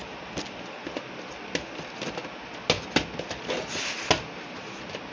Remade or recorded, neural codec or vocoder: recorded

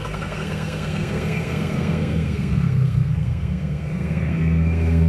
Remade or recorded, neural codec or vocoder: remade, codec, SNAC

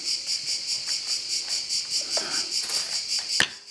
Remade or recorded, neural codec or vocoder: recorded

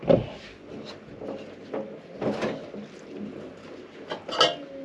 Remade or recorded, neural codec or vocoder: recorded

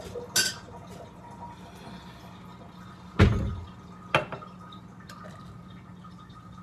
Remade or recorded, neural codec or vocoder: recorded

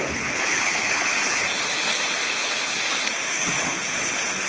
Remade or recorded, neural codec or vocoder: remade, codec, HILCodec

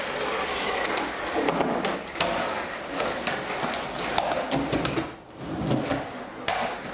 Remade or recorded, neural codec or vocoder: recorded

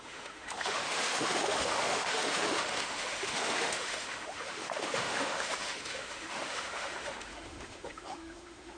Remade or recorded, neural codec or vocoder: remade, autoencoder, DAC-VAE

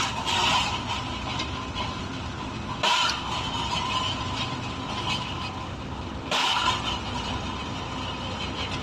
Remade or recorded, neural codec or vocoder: recorded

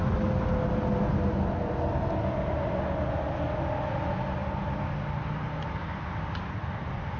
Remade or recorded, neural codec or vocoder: recorded